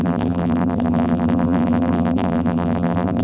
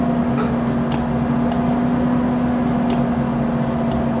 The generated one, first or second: first